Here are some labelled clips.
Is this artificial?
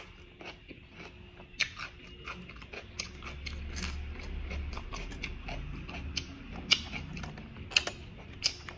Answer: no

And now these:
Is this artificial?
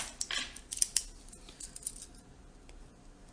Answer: no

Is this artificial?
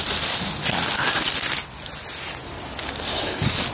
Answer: no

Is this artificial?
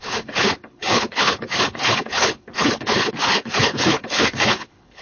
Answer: yes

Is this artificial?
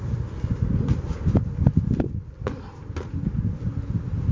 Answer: no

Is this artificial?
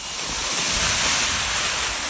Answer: no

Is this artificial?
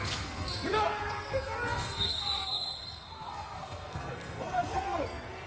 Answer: yes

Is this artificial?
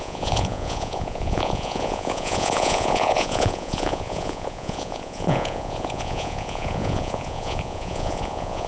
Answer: yes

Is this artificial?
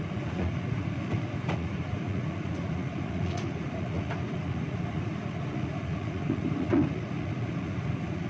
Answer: yes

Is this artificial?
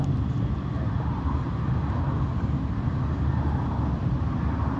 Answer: no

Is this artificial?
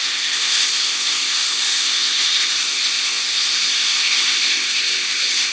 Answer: yes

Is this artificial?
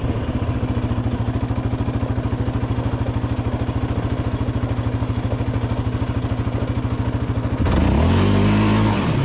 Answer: no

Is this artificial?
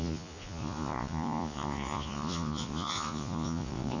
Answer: yes